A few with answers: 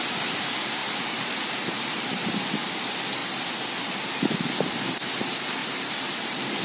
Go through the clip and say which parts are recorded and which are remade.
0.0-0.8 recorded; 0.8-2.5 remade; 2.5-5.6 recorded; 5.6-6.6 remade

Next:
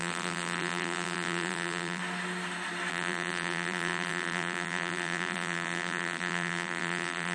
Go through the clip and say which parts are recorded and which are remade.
0.0-2.0 remade; 2.0-2.9 recorded; 2.9-7.3 remade

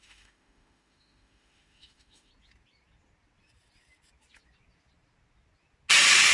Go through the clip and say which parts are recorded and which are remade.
0.0-2.3 remade; 2.3-6.3 recorded

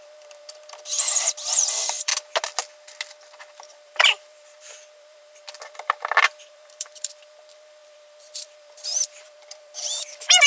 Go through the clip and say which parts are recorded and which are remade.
0.0-2.1 remade; 2.1-3.5 recorded; 3.5-10.5 remade

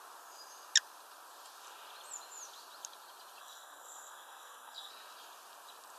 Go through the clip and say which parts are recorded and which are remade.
0.0-3.4 recorded; 3.4-4.9 remade; 4.9-6.0 recorded

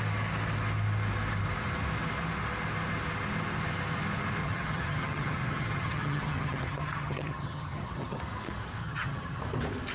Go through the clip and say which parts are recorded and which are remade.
0.0-4.4 recorded; 4.4-8.2 remade; 8.2-8.8 recorded; 8.8-9.4 remade; 9.4-9.9 recorded